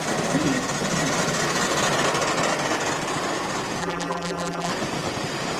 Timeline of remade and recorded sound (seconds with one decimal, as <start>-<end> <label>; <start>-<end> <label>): 0.0-3.8 recorded; 3.8-4.7 remade; 4.7-5.6 recorded